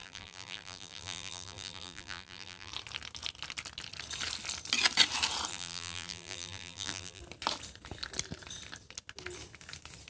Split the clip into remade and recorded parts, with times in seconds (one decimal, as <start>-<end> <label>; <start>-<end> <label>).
0.0-2.7 remade; 2.7-5.5 recorded; 5.5-7.2 remade; 7.2-10.1 recorded